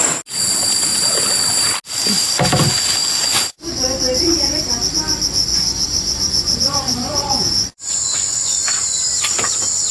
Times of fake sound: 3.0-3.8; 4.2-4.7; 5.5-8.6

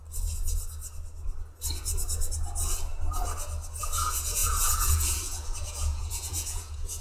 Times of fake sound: 3.8-7.0

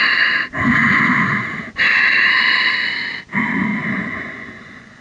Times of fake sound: 0.8-1.5; 3.7-5.0

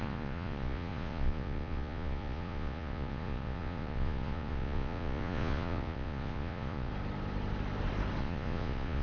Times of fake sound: 0.0-6.9; 8.2-9.0

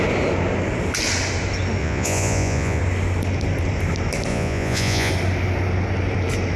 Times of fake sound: 1.8-2.8; 4.3-5.1

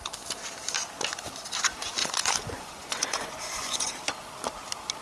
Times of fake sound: 2.0-3.9

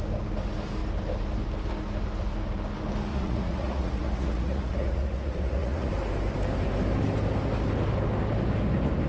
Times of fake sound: 3.1-5.9

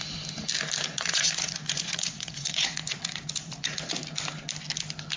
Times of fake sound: 0.9-4.0